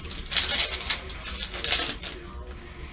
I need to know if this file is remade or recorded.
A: recorded